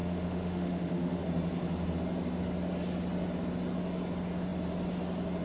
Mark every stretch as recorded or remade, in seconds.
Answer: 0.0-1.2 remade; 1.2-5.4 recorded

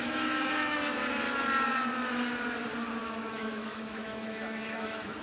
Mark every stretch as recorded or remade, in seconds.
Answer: 0.0-1.0 remade; 1.0-3.0 recorded; 3.0-5.2 remade

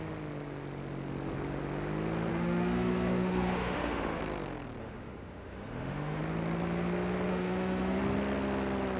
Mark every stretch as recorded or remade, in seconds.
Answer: 0.0-2.3 recorded; 2.3-4.2 remade; 4.2-4.8 recorded; 4.8-6.2 remade; 6.2-7.3 recorded; 7.3-8.0 remade; 8.0-9.0 recorded

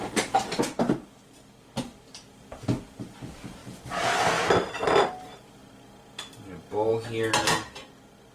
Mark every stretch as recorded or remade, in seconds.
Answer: 0.0-8.3 recorded

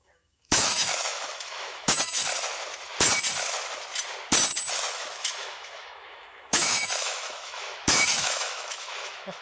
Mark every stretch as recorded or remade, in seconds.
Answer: 0.0-2.2 remade; 2.2-4.7 recorded; 4.7-9.4 remade